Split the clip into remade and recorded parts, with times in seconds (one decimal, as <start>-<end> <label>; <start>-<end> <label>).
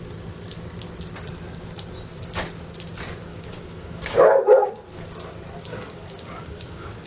0.0-3.3 recorded; 3.3-4.7 remade; 4.7-5.7 recorded; 5.7-7.1 remade